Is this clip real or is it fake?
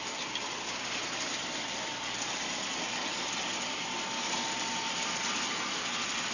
real